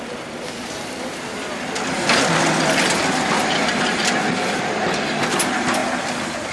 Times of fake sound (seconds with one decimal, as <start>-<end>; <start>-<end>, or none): none